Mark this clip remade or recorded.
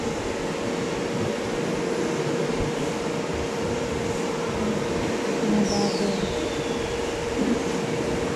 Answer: recorded